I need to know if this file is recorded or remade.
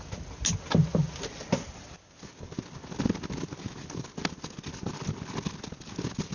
recorded